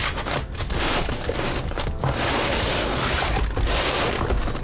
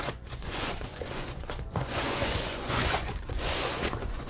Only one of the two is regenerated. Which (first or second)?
second